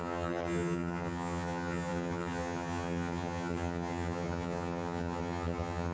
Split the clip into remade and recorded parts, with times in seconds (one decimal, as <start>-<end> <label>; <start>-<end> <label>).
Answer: 0.0-5.9 remade